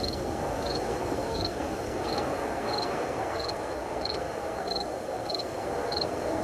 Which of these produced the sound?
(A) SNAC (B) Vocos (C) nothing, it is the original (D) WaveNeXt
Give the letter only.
A